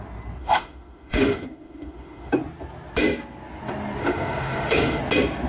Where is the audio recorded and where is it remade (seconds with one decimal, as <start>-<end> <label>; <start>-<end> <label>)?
0.0-0.4 recorded; 0.4-2.3 remade; 2.3-4.0 recorded; 4.0-5.0 remade; 5.0-5.5 recorded